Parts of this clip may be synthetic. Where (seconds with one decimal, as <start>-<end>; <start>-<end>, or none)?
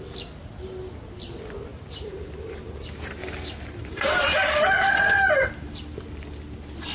1.7-5.8